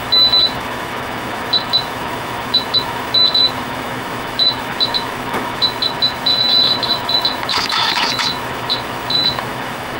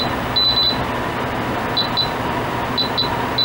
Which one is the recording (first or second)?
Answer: second